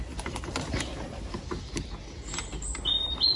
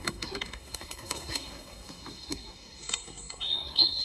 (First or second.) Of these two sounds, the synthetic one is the second